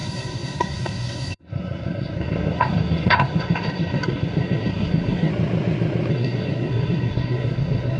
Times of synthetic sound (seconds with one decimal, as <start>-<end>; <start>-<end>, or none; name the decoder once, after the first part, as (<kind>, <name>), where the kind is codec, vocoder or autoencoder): 0.0-5.3 (codec, SNAC); 6.1-8.0